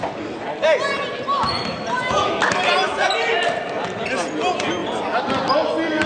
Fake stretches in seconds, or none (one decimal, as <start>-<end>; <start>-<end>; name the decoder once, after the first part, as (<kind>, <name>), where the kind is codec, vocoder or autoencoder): none